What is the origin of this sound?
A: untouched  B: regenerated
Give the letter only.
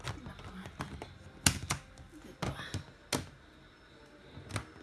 A